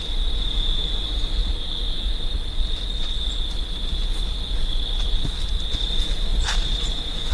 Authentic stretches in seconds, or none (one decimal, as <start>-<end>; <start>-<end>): 0.0-1.4; 3.5-6.3